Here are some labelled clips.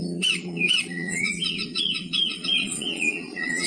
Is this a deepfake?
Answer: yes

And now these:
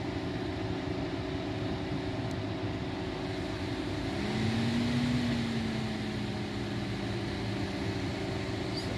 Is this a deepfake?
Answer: no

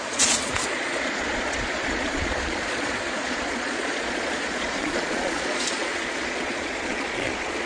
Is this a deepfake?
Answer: yes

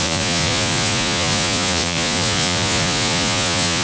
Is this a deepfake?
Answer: yes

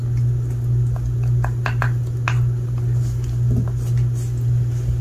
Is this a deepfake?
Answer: no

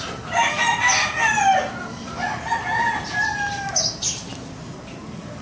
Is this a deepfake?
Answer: no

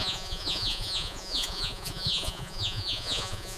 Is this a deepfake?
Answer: yes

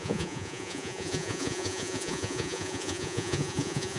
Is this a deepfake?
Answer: yes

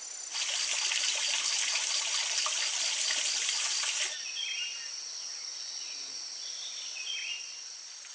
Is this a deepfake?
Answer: no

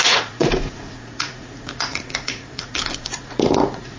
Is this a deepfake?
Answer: yes